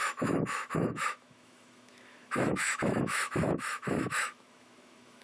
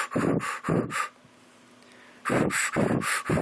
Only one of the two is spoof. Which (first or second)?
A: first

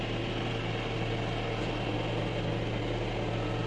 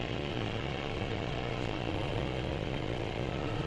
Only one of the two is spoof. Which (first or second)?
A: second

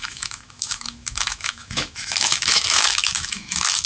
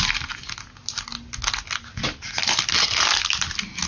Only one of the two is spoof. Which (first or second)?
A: first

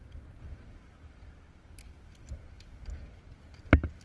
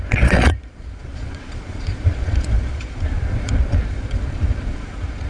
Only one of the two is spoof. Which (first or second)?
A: second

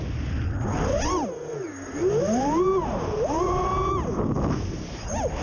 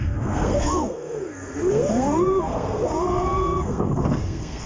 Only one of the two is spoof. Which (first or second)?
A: second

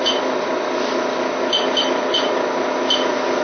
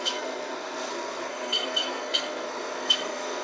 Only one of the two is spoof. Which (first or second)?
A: second